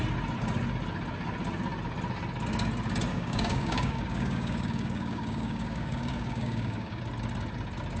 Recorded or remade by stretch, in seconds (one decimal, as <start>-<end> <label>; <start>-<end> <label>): 0.0-3.1 recorded; 3.1-7.0 remade; 7.0-8.0 recorded